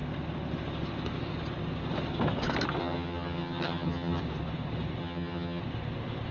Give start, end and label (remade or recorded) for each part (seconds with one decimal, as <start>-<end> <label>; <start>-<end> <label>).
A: 0.0-2.8 recorded; 2.8-4.2 remade; 4.2-5.0 recorded; 5.0-5.6 remade; 5.6-6.3 recorded